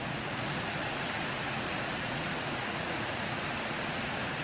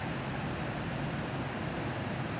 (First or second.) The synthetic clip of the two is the first